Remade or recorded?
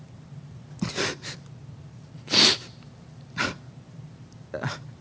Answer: recorded